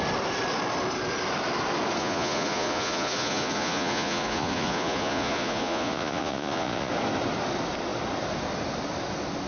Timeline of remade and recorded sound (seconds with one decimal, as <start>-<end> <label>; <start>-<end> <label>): 0.0-2.0 recorded; 2.0-6.9 remade; 6.9-9.5 recorded